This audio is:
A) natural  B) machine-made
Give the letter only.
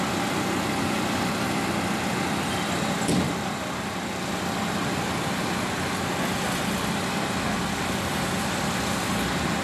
A